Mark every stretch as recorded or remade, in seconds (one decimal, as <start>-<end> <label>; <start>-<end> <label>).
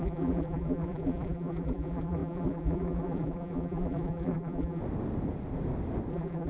0.0-4.8 remade; 4.8-6.1 recorded; 6.1-6.5 remade